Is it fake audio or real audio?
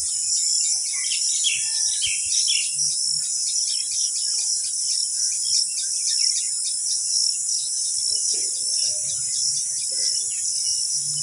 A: real